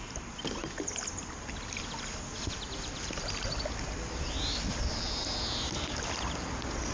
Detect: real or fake real